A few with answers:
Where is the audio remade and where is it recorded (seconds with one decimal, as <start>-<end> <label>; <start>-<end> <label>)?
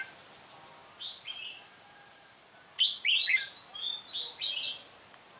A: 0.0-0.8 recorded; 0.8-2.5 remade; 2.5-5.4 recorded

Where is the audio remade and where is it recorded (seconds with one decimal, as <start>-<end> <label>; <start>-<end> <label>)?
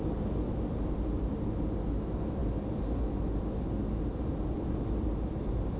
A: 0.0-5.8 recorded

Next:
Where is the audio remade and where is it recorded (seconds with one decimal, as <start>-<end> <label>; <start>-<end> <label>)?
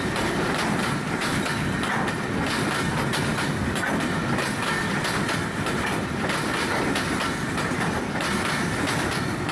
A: 0.0-9.5 recorded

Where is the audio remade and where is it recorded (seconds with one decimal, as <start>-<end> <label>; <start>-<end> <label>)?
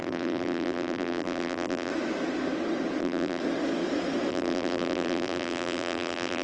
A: 0.0-1.9 remade; 1.9-3.0 recorded; 3.0-3.4 remade; 3.4-4.3 recorded; 4.3-6.4 remade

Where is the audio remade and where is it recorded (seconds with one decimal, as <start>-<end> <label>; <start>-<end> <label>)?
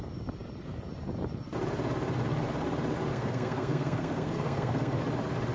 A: 0.0-3.1 recorded; 3.1-5.0 remade; 5.0-5.5 recorded